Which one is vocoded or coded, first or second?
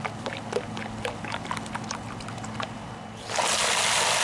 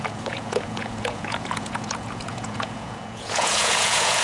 second